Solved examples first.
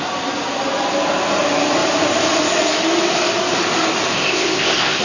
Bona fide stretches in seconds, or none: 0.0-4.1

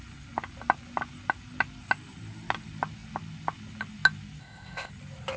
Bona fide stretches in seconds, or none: 0.0-4.4; 4.9-5.4

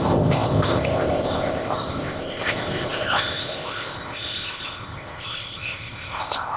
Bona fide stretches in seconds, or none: none

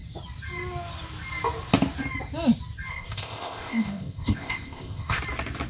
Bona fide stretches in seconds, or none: 0.0-2.9; 5.2-5.7

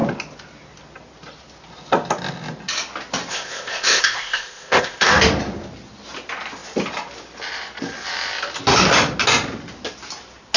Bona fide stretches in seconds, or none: 0.0-3.3; 5.1-10.6

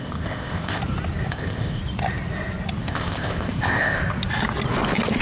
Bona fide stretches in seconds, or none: 0.8-1.3; 1.8-2.8; 4.0-5.2

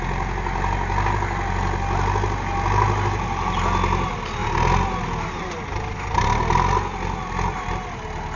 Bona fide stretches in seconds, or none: 0.0-8.4

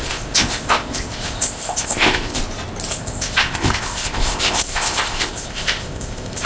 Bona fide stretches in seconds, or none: 2.4-2.9